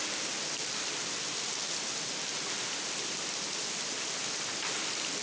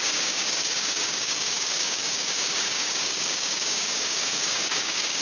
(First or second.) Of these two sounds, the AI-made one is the second